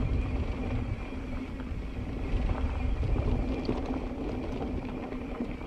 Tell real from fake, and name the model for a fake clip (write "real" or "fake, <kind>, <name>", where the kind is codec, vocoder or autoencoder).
fake, vocoder, BigVGAN v2